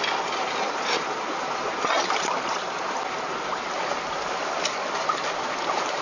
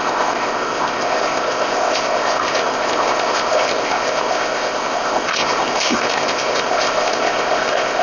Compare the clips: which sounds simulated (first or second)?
second